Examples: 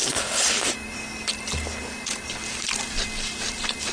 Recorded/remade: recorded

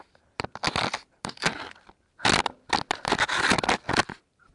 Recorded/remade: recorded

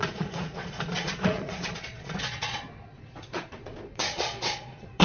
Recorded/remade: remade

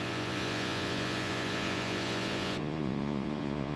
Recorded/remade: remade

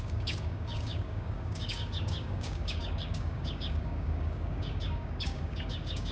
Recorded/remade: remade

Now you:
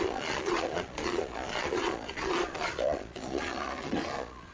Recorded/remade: remade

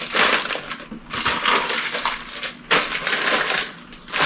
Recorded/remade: recorded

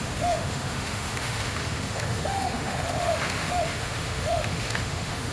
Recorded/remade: remade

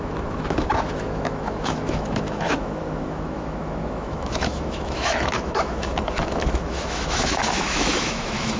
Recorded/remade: remade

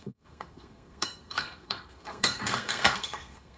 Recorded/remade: remade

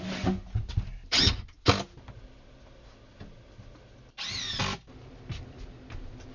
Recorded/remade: recorded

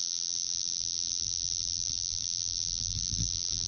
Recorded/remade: remade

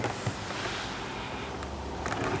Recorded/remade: recorded